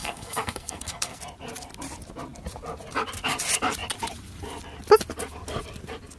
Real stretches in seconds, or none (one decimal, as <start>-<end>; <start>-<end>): 1.2-6.2